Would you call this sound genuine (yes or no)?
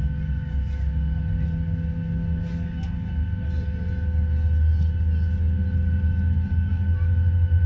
yes